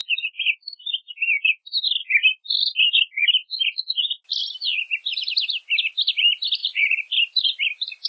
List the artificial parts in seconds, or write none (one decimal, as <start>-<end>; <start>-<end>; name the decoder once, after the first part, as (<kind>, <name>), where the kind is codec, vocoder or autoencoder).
4.4-5.3 (vocoder, BigVGAN v2); 6.6-7.6